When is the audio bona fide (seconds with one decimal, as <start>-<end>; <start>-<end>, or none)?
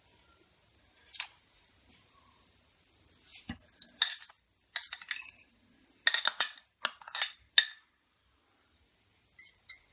3.3-8.1